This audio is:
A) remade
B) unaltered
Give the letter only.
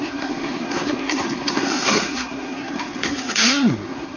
A